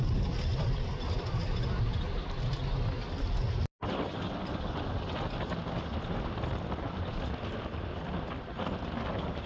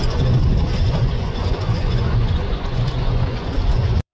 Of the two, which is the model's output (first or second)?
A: second